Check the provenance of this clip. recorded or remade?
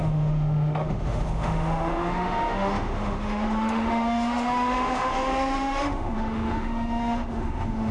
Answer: remade